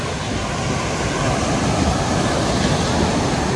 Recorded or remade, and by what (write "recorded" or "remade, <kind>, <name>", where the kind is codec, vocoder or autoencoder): recorded